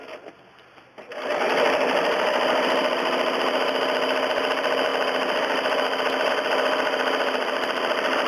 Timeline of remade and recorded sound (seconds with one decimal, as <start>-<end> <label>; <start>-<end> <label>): 0.0-8.3 recorded